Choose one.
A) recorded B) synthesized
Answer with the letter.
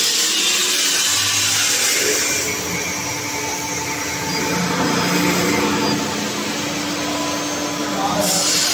A